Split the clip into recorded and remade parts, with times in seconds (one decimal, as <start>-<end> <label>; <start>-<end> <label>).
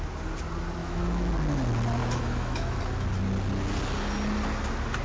0.0-0.8 recorded; 0.8-1.3 remade; 1.3-2.0 recorded; 2.0-2.8 remade; 2.8-5.0 recorded